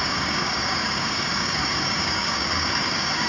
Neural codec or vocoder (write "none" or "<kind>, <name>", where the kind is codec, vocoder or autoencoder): codec, DAC